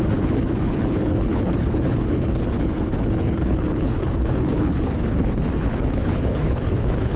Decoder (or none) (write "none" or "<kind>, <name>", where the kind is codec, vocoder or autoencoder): codec, HILCodec